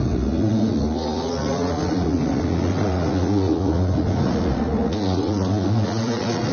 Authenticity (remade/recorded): remade